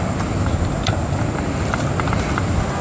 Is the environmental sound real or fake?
real